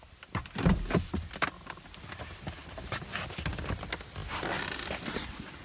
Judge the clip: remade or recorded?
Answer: recorded